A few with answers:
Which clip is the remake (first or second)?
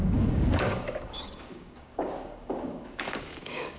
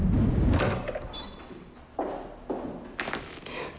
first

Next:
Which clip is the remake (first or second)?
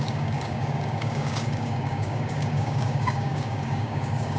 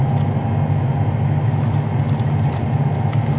first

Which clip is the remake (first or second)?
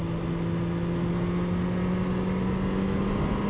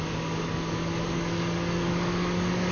second